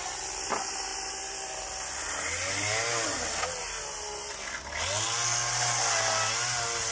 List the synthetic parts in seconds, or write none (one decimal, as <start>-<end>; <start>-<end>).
none